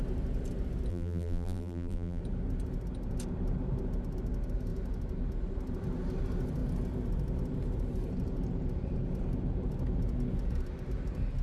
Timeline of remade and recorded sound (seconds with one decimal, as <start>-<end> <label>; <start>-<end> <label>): 0.0-0.9 recorded; 0.9-2.2 remade; 2.2-11.4 recorded